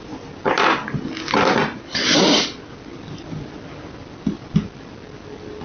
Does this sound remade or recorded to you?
recorded